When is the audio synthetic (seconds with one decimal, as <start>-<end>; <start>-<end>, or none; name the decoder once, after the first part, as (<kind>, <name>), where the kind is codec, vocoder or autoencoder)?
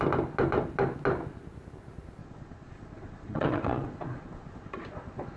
2.2-5.4 (vocoder, Vocos)